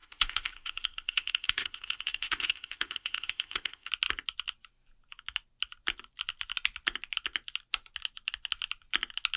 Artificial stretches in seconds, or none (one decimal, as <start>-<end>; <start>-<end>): 0.0-3.9